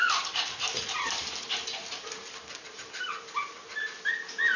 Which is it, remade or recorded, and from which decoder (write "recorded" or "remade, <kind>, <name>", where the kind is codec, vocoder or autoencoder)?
recorded